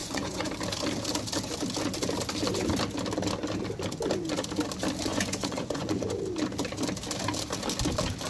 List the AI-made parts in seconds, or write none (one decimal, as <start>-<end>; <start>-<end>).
0.0-0.5; 5.1-6.2